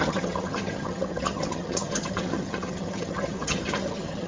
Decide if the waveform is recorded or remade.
remade